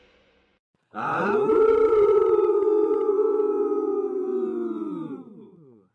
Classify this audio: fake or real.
fake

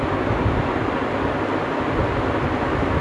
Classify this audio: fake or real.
real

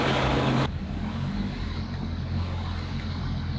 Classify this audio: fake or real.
fake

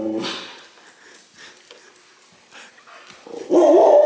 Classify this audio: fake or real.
real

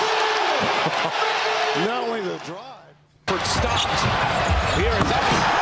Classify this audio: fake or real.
real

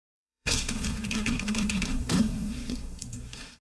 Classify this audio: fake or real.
fake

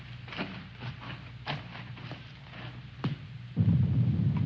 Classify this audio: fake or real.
real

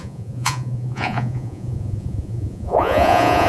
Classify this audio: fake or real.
fake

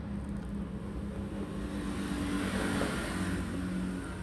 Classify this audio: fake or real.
real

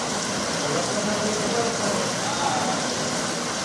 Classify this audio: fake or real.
real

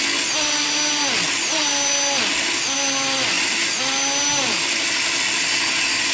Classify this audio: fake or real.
real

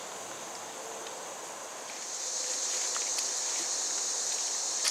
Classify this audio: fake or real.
real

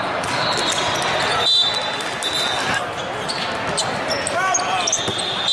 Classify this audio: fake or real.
real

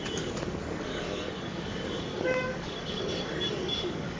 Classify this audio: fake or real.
fake